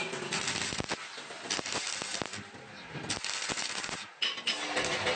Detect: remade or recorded recorded